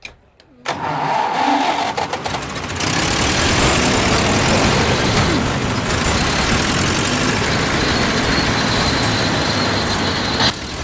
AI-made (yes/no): no